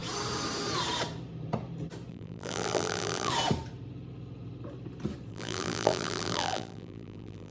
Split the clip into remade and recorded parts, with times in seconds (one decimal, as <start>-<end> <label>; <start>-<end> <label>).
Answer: 0.0-2.1 recorded; 2.1-3.3 remade; 3.3-5.3 recorded; 5.3-7.5 remade